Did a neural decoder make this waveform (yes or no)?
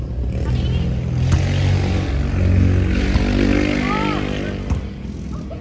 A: no